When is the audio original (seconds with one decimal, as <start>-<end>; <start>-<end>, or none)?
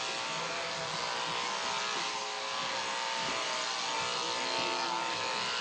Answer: 0.0-5.6